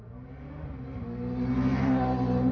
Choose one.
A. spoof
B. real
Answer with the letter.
B